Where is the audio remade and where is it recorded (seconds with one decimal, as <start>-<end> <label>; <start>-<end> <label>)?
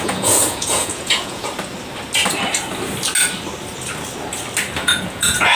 0.0-1.4 remade; 1.4-4.8 recorded; 4.8-5.6 remade